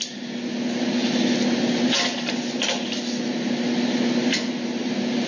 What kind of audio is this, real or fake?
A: real